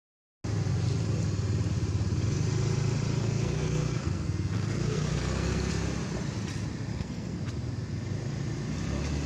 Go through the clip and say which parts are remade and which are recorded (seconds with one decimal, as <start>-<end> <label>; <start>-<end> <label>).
0.0-3.2 recorded; 3.2-5.7 remade; 5.7-6.9 recorded; 6.9-7.4 remade; 7.4-9.3 recorded